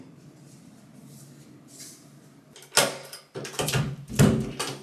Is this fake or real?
real